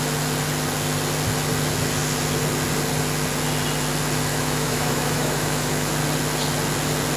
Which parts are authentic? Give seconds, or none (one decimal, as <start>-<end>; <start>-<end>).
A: 0.0-4.3; 5.9-7.2